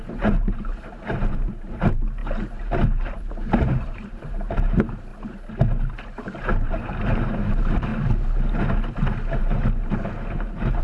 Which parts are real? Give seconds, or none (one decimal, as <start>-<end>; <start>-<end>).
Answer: 5.1-6.1; 7.9-9.4

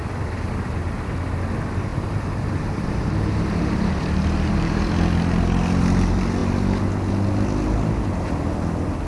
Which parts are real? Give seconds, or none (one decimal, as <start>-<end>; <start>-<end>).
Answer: 0.0-1.9; 4.8-9.1

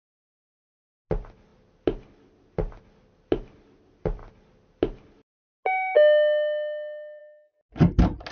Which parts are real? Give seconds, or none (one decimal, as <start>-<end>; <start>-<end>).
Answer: 0.0-8.3

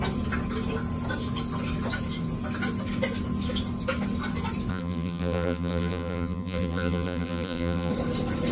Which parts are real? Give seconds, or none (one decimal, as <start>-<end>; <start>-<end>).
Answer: 0.0-4.7; 7.9-8.5

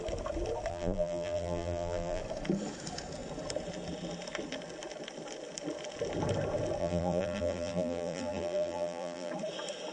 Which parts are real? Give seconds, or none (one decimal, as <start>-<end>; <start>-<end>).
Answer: 0.0-0.7; 2.2-6.8; 9.3-9.9